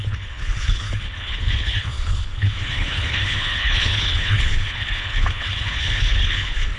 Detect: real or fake fake